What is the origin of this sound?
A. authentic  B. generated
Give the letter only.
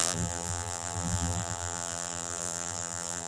B